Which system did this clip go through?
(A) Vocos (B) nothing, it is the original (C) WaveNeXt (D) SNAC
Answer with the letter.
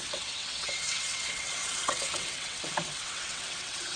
C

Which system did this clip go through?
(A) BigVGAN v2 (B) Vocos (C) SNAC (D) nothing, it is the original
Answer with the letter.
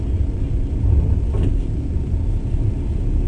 D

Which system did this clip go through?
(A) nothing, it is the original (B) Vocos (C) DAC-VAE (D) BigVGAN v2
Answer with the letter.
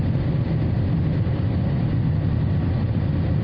A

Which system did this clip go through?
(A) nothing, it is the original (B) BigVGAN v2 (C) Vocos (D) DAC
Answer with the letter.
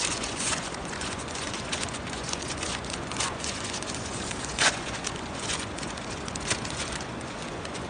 C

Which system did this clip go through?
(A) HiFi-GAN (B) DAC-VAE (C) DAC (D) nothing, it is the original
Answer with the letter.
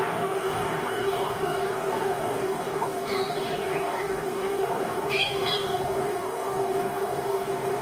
C